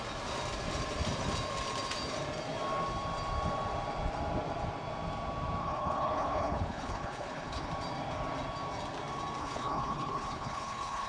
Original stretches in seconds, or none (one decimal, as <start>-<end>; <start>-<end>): 0.0-5.6; 7.7-9.4